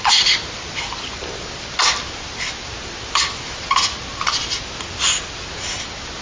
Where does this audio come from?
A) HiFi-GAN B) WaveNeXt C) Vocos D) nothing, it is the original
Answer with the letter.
D